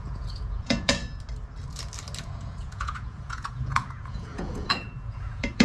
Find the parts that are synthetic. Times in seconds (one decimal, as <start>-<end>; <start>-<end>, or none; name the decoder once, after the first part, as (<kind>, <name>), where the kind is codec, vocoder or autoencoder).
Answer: 0.0-1.0 (vocoder, Vocos); 2.2-5.6